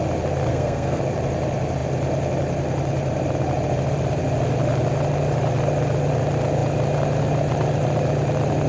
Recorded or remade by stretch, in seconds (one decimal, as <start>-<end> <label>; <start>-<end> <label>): 0.0-0.5 recorded; 0.5-1.0 remade; 1.0-8.7 recorded